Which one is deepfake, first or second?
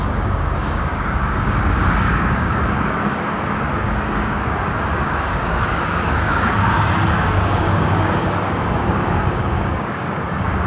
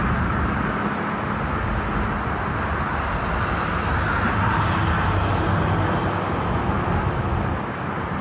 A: first